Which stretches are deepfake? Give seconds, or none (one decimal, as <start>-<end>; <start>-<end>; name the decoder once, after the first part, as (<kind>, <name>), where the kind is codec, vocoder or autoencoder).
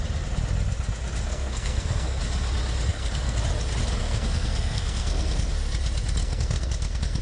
1.3-2.2 (codec, SNAC); 2.9-3.4; 4.0-5.5; 6.2-7.2